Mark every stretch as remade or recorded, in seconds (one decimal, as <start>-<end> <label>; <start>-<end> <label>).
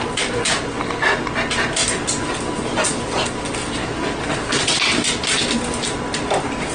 0.0-1.8 recorded; 1.8-4.3 remade; 4.3-6.7 recorded